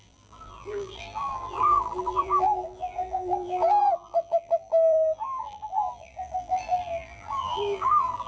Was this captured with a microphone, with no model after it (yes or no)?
no